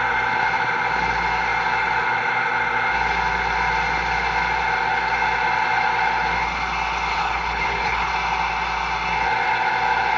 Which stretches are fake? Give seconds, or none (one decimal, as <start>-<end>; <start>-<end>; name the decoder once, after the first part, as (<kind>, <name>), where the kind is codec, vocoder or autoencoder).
7.1-8.1 (codec, HILCodec)